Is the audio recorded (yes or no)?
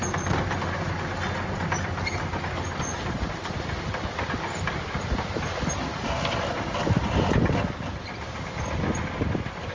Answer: yes